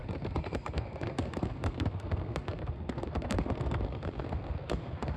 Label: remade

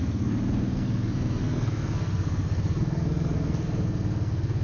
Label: remade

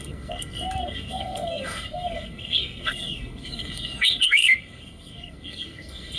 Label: remade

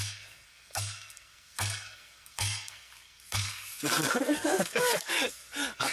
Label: remade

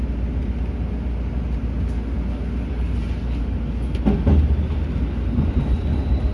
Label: recorded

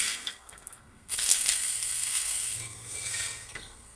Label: remade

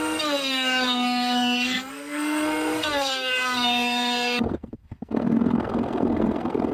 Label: remade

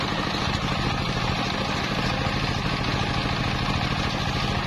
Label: recorded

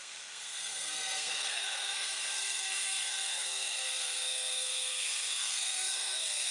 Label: remade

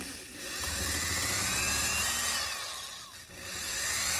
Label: recorded